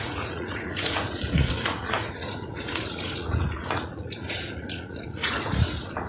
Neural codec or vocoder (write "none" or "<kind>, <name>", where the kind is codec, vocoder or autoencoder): vocoder, Vocos